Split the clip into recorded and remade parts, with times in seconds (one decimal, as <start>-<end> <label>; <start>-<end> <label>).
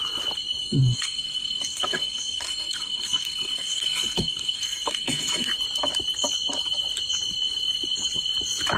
0.0-0.6 recorded; 0.6-5.5 remade; 5.5-8.8 recorded